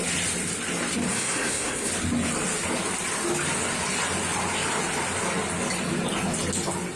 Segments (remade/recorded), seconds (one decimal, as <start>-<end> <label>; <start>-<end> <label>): 0.0-1.1 recorded; 1.1-1.9 remade; 1.9-7.0 recorded